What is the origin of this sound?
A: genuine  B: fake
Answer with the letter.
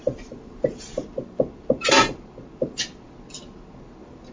A